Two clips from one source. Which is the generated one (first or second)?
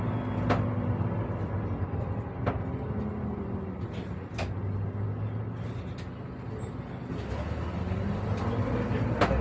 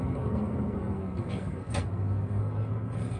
second